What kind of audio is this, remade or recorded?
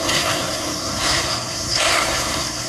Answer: remade